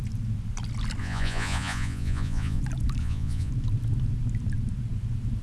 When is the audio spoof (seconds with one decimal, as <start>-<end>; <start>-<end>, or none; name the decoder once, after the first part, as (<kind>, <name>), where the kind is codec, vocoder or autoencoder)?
1.0-2.6 (vocoder, Vocos); 3.0-3.5